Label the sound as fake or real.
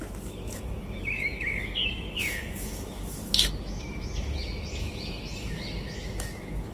fake